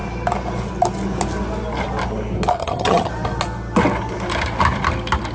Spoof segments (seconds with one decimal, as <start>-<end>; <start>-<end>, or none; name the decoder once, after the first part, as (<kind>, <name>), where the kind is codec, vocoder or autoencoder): 2.6-3.1 (vocoder, HiFi-GAN)